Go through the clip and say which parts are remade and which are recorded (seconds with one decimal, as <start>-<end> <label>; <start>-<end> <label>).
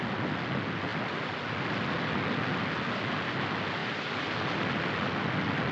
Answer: 0.0-5.7 recorded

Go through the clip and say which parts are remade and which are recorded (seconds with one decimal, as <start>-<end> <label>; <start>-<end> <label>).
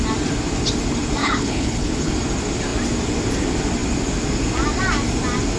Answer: 0.0-1.2 recorded; 1.2-2.1 remade; 2.1-5.6 recorded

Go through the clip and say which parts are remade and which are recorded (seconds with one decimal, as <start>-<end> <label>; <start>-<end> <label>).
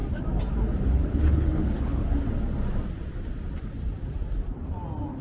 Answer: 0.0-0.9 recorded; 0.9-2.0 remade; 2.0-5.2 recorded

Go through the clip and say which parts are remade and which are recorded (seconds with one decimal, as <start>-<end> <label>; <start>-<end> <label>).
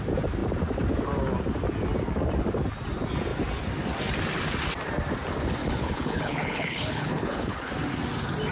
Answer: 0.0-5.6 recorded; 5.6-7.7 remade; 7.7-8.5 recorded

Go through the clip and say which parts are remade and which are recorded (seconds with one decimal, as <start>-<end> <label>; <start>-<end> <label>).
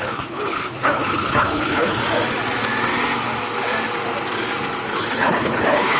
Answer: 0.0-2.0 remade; 2.0-4.9 recorded; 4.9-6.0 remade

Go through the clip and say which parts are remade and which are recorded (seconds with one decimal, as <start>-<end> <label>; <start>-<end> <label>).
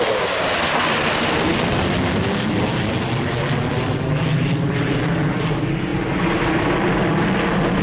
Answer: 0.0-7.8 recorded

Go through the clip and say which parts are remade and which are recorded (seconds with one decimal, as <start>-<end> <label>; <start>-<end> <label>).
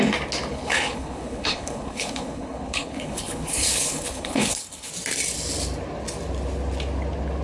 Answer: 0.0-0.5 recorded; 0.5-4.9 remade; 4.9-7.4 recorded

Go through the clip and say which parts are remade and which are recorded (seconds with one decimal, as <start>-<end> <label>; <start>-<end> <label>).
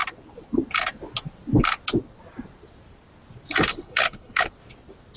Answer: 0.0-3.7 recorded; 3.7-4.5 remade; 4.5-5.2 recorded